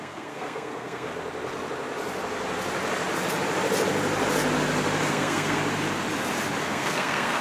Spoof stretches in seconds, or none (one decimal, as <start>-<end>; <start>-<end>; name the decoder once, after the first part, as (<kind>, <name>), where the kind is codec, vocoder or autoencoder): 0.0-1.1 (codec, SNAC); 5.1-5.6; 6.6-7.4